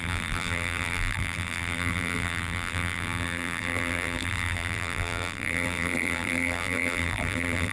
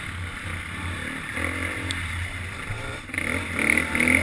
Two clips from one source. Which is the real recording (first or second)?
second